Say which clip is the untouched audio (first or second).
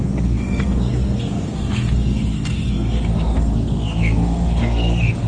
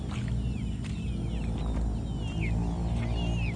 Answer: second